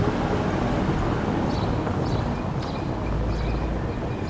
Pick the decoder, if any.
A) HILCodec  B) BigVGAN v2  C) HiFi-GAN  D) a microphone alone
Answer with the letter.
D